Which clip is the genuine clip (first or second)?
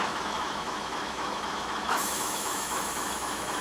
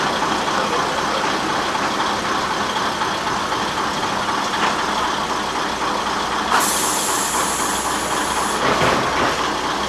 second